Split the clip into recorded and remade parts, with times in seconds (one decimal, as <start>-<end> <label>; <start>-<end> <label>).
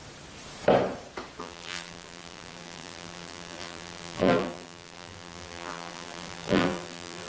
0.0-1.4 recorded; 1.4-7.3 remade